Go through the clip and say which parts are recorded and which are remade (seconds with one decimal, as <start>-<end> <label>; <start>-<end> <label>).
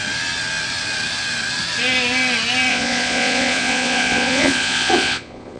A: 0.0-2.7 recorded; 2.7-5.6 remade